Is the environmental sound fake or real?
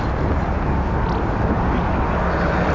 real